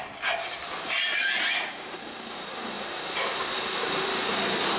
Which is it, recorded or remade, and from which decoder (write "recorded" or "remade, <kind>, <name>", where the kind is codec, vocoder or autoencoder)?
recorded